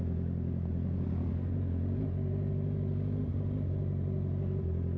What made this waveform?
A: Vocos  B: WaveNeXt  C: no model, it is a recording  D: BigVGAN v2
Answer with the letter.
C